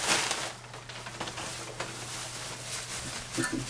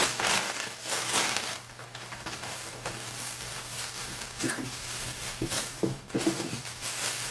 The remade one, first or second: second